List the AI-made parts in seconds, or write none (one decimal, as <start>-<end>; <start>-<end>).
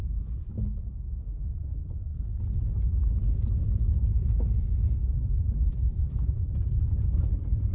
5.0-6.5